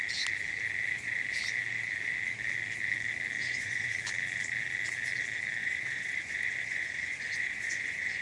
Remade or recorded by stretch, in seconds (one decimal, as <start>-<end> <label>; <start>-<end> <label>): 0.0-3.4 recorded; 3.4-3.9 remade; 3.9-5.6 recorded; 5.6-8.2 remade